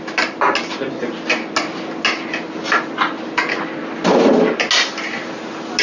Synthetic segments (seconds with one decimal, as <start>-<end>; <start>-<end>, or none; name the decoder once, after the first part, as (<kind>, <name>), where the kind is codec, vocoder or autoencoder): none